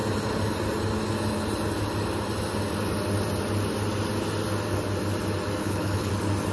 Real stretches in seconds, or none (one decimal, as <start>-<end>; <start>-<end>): 0.0-5.6; 6.1-6.5